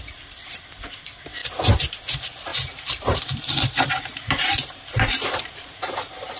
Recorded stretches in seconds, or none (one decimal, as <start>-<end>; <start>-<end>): 0.0-2.5